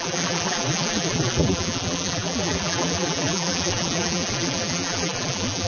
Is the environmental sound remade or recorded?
remade